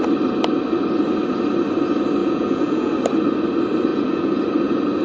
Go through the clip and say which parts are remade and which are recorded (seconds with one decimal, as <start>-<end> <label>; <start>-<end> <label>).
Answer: 0.0-2.2 recorded; 2.2-2.9 remade; 2.9-3.9 recorded; 3.9-4.4 remade; 4.4-5.0 recorded